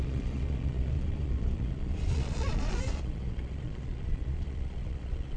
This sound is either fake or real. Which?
fake